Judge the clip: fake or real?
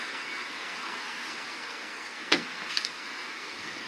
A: fake